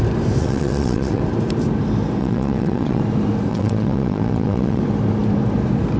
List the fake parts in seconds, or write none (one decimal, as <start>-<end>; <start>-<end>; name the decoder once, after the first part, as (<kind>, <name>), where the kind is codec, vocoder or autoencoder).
0.4-1.2 (vocoder, WaveNeXt); 2.2-3.0; 3.5-4.8